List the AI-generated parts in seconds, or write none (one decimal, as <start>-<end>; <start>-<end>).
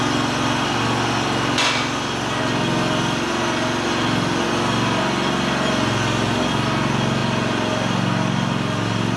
none